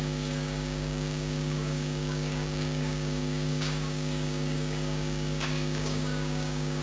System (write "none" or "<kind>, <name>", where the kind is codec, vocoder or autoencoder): codec, DAC